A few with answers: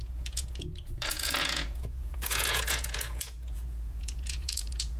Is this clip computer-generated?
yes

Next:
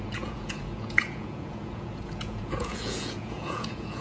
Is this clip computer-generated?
yes